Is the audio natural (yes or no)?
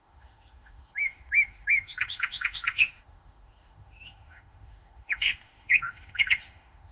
no